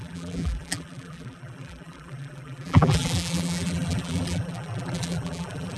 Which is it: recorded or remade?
remade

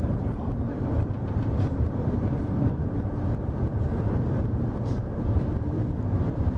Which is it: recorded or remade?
remade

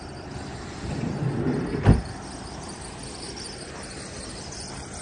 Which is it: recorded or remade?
recorded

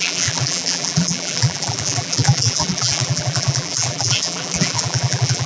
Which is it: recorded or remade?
remade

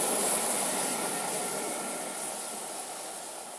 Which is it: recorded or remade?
recorded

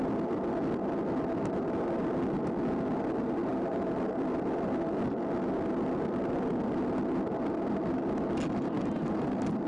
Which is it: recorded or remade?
recorded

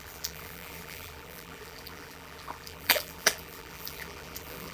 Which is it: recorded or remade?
remade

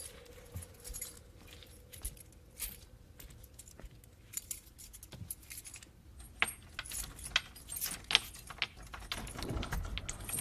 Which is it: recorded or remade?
recorded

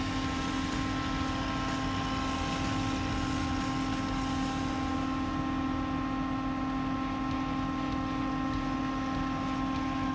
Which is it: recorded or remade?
recorded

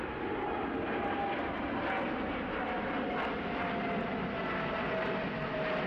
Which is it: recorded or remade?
recorded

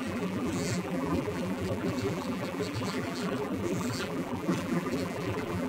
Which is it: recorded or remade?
remade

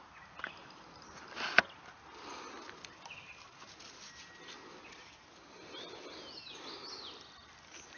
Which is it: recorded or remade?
recorded